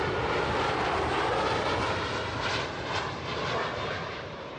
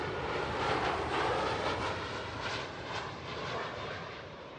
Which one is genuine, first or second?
first